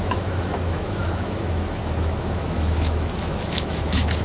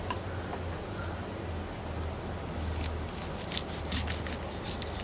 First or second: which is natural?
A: second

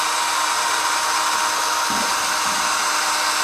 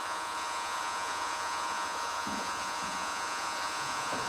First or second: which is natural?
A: first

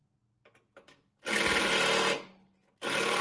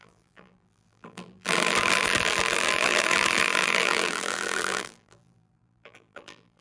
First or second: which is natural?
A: first